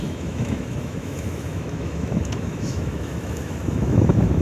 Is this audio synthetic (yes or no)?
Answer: yes